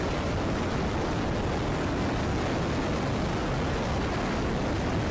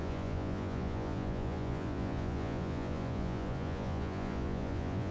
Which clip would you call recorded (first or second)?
first